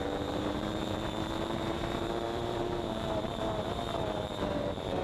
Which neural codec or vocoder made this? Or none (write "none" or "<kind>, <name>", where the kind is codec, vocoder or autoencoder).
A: vocoder, BigVGAN v2